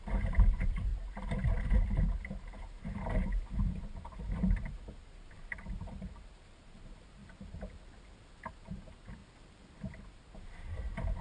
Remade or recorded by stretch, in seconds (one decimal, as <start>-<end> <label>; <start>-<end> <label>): 0.0-0.9 remade; 0.9-2.4 recorded; 2.4-7.2 remade; 7.2-8.5 recorded; 8.5-9.2 remade; 9.2-10.0 recorded; 10.0-11.2 remade